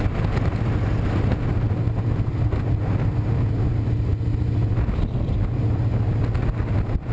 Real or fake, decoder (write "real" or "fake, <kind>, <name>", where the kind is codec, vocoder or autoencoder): real